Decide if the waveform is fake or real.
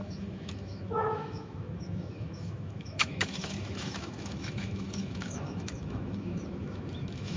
fake